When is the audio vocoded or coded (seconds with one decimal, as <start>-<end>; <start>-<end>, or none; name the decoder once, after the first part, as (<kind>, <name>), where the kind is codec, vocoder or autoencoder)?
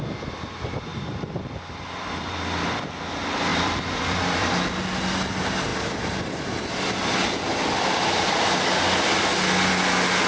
0.9-3.1 (vocoder, BigVGAN v2); 3.5-4.5